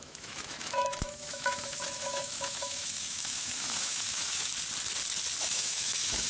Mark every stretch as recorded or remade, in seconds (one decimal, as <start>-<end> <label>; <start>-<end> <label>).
0.0-4.5 remade; 4.5-5.4 recorded; 5.4-6.3 remade